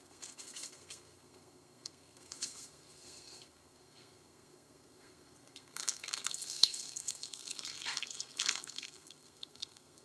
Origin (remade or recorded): remade